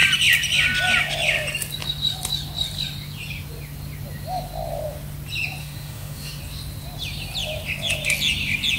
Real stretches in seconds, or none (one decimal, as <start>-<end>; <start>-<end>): 0.0-5.6; 6.4-8.8